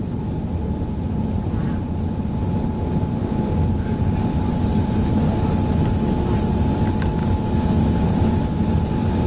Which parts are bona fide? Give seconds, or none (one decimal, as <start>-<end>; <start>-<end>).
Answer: 0.0-3.2; 4.0-7.2; 7.8-9.3